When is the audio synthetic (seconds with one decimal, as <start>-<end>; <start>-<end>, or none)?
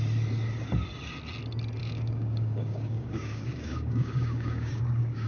1.8-5.3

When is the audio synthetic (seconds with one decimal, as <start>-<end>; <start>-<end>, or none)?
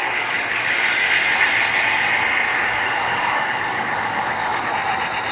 0.0-1.1; 2.5-4.7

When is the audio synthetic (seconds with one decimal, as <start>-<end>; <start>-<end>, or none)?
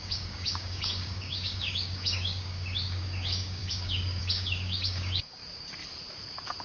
0.0-5.4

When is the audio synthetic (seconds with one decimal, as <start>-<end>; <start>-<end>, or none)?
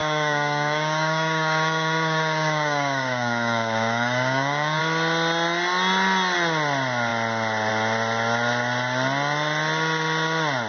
0.0-4.8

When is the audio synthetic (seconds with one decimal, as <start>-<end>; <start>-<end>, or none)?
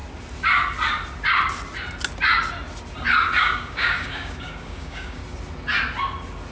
3.4-5.2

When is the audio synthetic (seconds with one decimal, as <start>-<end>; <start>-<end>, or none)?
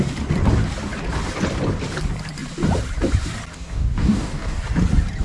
3.5-4.6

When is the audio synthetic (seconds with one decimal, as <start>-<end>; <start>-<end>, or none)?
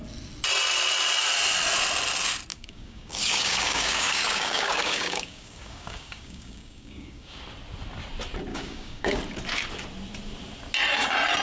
2.5-7.4; 8.5-9.2